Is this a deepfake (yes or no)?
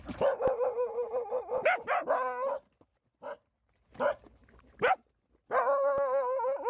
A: no